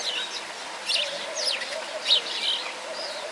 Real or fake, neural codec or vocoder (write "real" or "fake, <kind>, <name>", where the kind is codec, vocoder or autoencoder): real